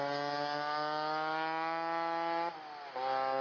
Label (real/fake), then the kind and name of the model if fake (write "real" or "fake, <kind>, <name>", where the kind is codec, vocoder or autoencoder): real